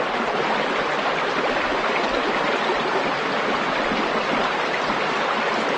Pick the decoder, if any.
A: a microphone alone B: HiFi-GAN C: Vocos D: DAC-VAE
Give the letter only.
A